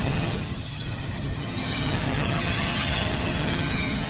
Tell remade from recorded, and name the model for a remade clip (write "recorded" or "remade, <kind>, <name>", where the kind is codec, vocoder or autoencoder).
remade, vocoder, HiFi-GAN